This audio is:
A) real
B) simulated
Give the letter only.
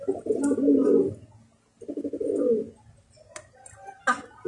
A